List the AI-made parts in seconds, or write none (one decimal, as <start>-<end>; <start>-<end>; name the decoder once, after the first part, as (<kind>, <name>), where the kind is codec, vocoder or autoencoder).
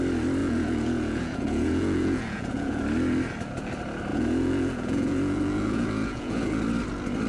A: 0.4-2.8 (vocoder, Vocos); 4.1-6.6